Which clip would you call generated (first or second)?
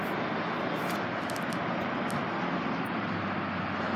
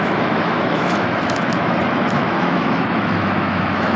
second